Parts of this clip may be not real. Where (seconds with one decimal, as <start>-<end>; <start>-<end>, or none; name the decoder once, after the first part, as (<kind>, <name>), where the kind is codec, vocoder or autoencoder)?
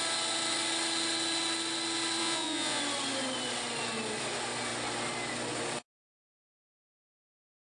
2.2-2.8 (vocoder, Vocos)